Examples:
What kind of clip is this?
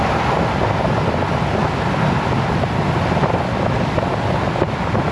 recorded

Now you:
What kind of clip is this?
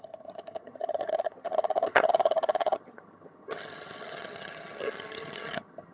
remade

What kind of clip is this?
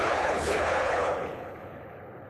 remade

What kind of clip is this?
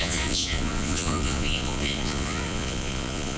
remade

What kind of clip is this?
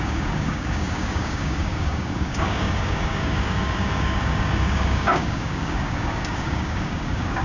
remade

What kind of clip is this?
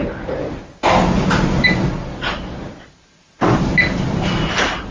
recorded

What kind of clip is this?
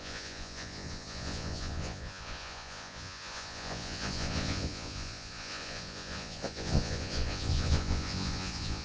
remade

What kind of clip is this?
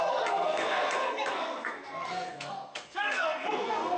remade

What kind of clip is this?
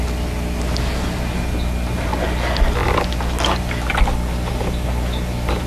recorded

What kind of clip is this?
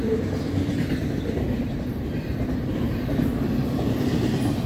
recorded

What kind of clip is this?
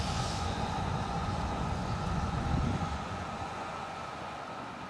remade